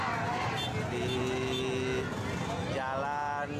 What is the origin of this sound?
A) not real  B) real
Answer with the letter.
B